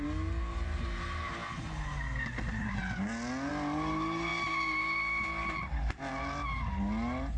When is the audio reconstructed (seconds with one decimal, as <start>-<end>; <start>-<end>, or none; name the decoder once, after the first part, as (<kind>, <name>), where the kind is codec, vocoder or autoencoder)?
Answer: none